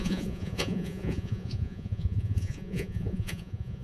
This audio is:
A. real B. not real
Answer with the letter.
B